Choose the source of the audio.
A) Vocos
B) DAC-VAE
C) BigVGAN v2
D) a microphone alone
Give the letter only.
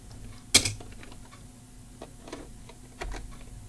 D